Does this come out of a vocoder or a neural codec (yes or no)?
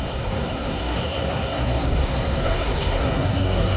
yes